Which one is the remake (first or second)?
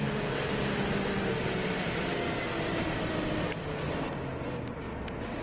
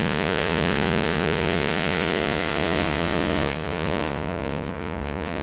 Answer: second